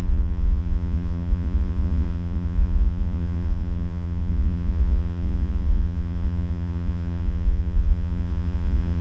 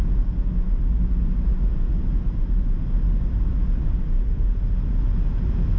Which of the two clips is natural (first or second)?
second